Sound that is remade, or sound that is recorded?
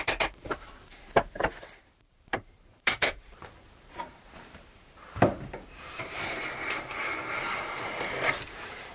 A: remade